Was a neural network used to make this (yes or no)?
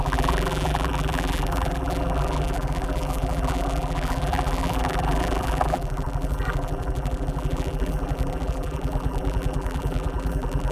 yes